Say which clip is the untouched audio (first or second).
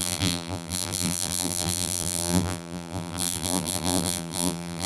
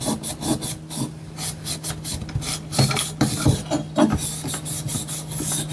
second